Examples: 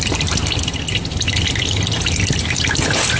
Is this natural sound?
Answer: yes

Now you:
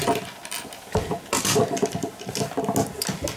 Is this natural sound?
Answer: yes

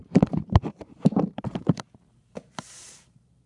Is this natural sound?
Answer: no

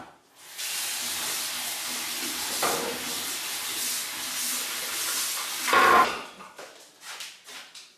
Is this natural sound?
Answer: yes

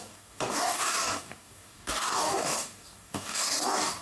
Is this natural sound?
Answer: no